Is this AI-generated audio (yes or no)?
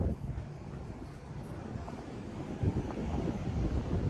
yes